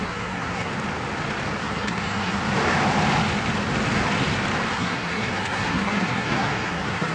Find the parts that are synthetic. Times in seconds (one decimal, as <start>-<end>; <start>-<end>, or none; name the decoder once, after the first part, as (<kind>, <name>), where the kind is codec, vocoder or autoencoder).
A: 0.0-0.7 (codec, SNAC); 1.6-2.4; 4.7-7.1